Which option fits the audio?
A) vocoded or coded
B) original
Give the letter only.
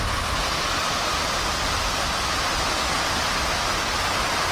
B